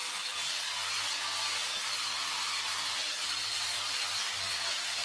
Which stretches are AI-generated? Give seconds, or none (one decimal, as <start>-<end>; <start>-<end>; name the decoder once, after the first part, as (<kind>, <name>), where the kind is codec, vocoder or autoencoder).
3.0-4.2 (vocoder, BigVGAN v2)